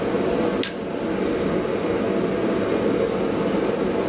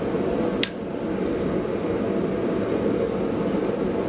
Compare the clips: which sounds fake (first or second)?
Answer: second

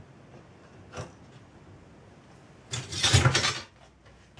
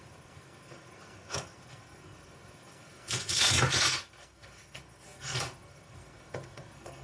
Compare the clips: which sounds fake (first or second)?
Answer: second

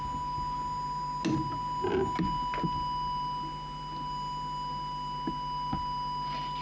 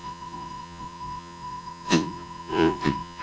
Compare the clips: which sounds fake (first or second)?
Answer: second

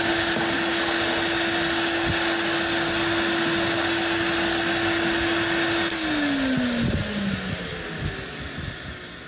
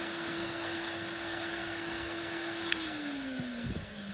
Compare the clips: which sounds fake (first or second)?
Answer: second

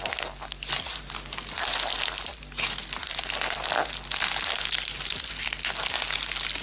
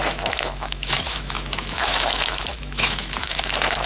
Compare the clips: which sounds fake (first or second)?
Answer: second